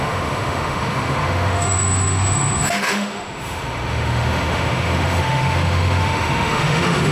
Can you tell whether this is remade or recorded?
remade